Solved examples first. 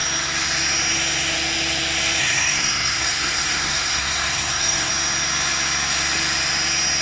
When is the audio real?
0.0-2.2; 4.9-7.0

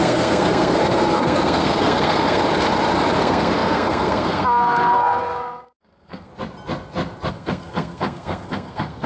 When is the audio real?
2.4-3.2; 6.3-7.3